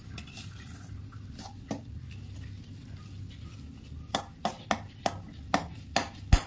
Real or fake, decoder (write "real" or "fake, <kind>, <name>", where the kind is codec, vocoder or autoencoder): real